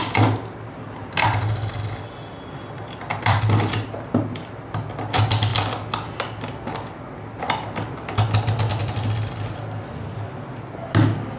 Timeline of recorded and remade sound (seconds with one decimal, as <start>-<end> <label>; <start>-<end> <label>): 0.0-11.4 recorded